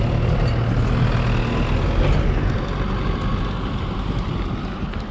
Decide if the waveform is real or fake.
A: real